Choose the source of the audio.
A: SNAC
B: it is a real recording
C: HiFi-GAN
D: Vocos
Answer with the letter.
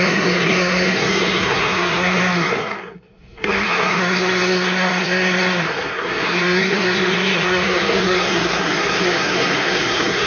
A